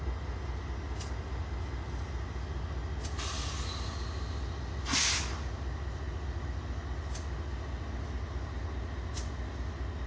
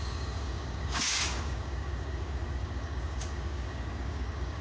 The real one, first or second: first